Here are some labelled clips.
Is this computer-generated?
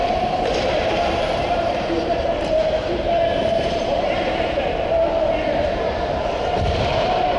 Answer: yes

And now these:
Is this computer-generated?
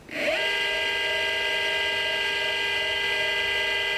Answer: no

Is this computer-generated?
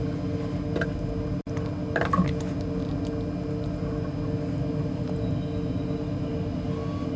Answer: no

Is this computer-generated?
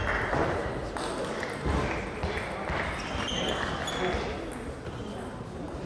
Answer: no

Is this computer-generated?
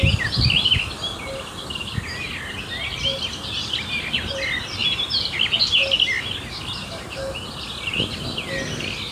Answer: no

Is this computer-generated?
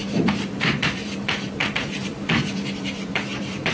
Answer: yes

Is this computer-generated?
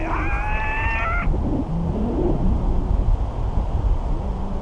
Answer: no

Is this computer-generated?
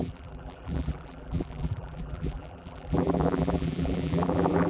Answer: yes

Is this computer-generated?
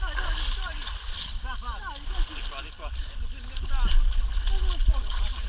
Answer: no